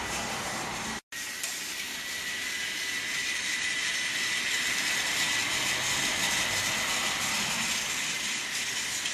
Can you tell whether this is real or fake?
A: real